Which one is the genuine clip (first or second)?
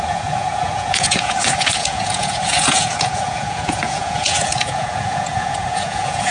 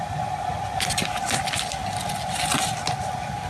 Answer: second